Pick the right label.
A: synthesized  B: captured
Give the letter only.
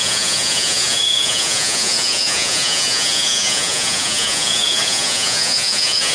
A